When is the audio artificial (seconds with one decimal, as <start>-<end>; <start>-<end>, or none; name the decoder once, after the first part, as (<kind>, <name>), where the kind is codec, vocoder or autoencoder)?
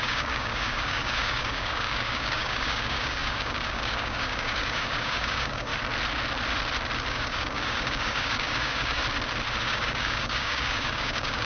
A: 0.0-5.7 (codec, DAC); 7.1-9.0; 9.6-11.4